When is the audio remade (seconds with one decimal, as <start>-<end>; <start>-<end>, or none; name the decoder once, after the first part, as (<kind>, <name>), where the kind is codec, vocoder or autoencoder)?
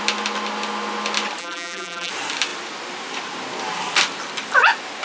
1.4-2.1 (vocoder, BigVGAN v2)